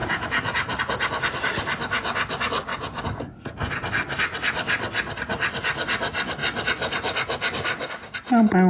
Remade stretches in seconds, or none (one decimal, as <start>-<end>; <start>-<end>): 0.0-0.8; 2.7-3.7